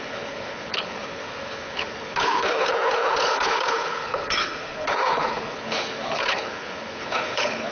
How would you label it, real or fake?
fake